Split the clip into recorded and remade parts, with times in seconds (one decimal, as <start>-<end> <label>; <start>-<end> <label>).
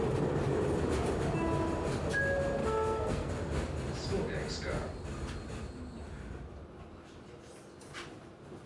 0.0-2.6 recorded; 2.6-3.3 remade; 3.3-8.7 recorded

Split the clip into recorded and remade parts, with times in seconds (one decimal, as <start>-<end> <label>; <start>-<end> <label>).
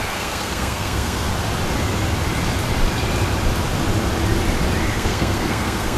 0.0-1.3 remade; 1.3-4.9 recorded; 4.9-6.0 remade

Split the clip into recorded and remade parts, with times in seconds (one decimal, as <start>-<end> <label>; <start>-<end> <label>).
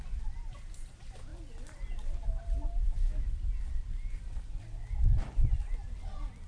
0.0-6.5 recorded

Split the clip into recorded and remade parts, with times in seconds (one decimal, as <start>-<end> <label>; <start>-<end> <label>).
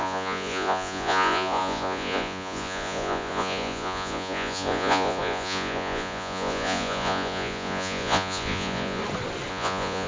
0.0-9.0 remade; 9.0-9.5 recorded; 9.5-10.1 remade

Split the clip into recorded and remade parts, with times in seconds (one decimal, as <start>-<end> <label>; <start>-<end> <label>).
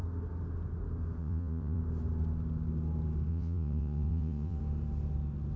0.0-1.2 recorded; 1.2-1.8 remade; 1.8-3.3 recorded; 3.3-4.6 remade; 4.6-5.6 recorded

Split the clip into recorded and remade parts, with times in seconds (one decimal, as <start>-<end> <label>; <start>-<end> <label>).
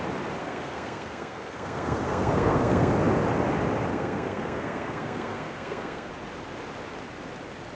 0.0-0.4 recorded; 0.4-2.9 remade; 2.9-3.9 recorded; 3.9-6.1 remade; 6.1-7.8 recorded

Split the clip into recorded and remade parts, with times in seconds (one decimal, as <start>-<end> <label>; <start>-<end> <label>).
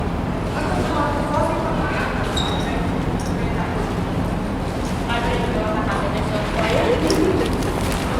0.0-8.2 recorded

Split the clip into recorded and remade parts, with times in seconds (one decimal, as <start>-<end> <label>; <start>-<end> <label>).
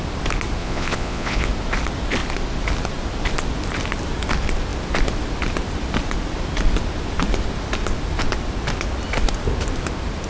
0.0-0.6 recorded; 0.6-1.5 remade; 1.5-10.3 recorded